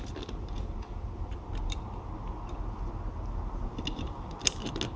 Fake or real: real